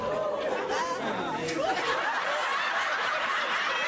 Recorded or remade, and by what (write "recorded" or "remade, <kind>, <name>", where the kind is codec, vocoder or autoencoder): recorded